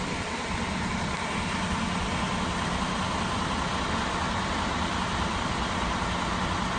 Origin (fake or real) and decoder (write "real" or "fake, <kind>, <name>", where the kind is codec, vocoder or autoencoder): real